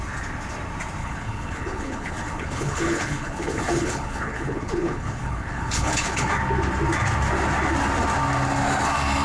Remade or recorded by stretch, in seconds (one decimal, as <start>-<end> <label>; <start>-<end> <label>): 0.0-1.0 recorded; 1.0-6.3 remade; 6.3-9.2 recorded